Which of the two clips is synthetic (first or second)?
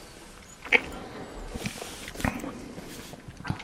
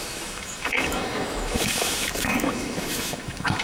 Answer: second